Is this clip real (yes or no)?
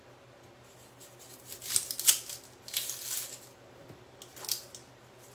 yes